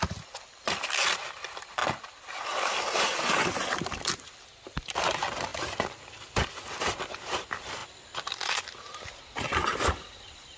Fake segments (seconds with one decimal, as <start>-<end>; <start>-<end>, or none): none

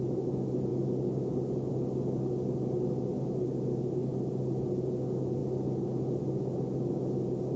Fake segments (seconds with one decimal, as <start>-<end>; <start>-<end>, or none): none

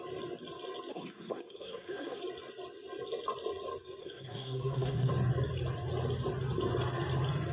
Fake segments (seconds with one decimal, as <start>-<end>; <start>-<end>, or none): 0.9-2.2; 4.0-5.1

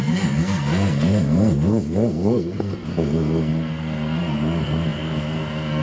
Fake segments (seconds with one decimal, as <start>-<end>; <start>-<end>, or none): 0.0-5.8

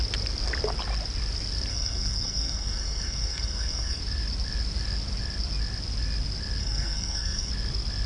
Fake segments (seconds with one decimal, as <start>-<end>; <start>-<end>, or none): 1.7-4.0; 6.6-7.5

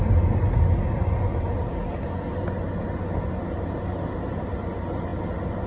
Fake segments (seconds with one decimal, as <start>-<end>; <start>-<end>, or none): none

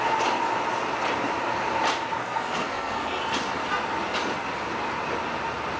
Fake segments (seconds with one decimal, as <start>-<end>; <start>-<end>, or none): 2.2-3.2